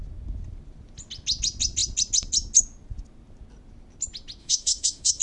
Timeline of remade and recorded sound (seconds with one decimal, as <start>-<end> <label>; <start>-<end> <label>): 0.0-4.4 recorded; 4.4-5.2 remade